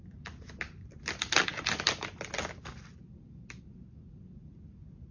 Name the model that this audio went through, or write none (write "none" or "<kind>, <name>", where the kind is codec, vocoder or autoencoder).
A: none